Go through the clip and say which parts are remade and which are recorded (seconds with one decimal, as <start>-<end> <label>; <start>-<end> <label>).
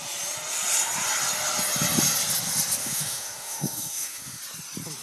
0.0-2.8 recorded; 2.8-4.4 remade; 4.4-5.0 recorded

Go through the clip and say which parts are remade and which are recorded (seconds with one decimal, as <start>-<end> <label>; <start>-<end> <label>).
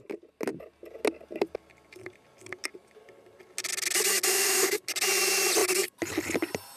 0.0-4.3 recorded; 4.3-4.8 remade; 4.8-6.8 recorded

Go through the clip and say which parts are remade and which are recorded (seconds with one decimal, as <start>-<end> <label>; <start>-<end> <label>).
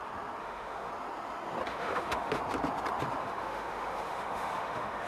0.0-0.4 recorded; 0.4-0.9 remade; 0.9-1.7 recorded; 1.7-2.4 remade; 2.4-3.2 recorded; 3.2-5.1 remade